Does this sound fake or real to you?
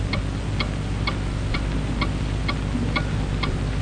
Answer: real